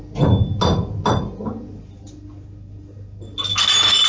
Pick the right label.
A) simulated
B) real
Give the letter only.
B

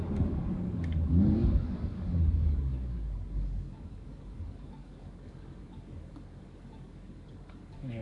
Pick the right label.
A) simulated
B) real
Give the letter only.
A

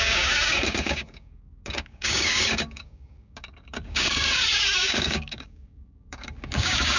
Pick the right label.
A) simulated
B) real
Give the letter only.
A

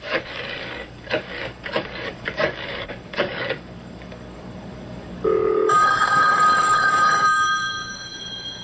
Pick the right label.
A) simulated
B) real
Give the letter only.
A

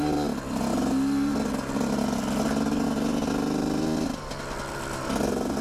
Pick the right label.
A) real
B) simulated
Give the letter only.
A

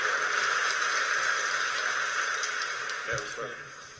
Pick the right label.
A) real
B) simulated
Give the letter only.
A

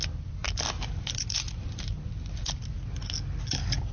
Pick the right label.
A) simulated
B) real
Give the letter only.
B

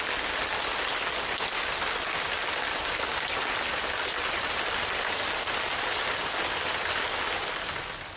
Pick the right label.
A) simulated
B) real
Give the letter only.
B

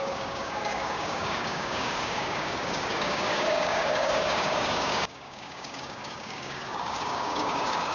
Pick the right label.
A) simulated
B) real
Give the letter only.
A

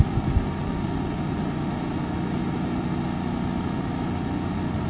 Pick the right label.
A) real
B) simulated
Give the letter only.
A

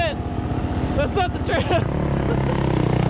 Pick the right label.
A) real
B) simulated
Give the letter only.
A